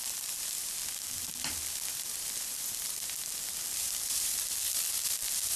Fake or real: fake